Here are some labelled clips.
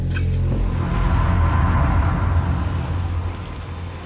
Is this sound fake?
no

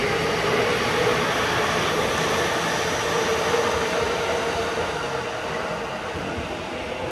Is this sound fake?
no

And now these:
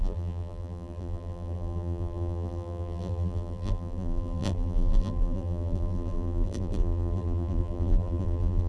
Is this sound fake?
yes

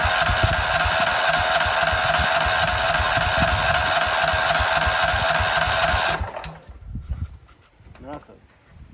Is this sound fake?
no